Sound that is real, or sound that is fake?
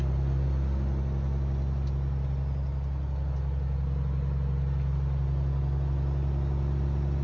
real